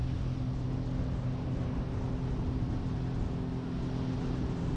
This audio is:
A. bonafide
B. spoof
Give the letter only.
A